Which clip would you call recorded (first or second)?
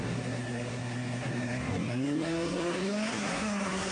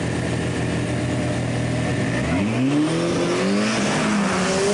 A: second